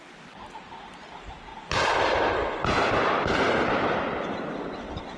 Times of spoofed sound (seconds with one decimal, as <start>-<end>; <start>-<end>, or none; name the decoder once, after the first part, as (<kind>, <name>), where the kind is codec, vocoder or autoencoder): none